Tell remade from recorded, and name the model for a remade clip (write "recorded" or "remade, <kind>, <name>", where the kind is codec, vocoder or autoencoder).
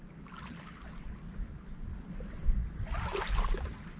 recorded